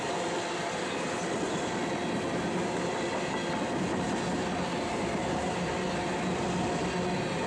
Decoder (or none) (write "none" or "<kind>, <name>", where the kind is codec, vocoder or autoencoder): none